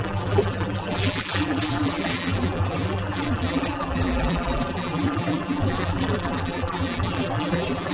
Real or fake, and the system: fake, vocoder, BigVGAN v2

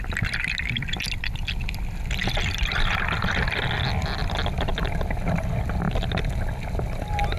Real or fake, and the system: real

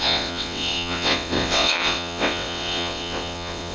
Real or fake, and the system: fake, vocoder, WaveNeXt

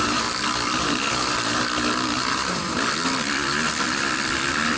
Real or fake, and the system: real